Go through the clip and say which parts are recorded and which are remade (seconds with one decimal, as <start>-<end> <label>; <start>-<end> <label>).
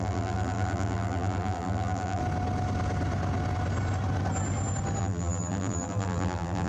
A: 0.0-2.2 remade; 2.2-5.0 recorded; 5.0-6.7 remade